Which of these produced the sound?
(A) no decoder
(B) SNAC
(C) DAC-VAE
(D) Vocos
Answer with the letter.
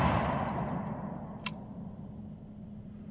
A